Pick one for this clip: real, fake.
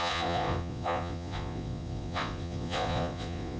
fake